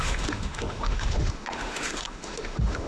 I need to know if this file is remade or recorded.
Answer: remade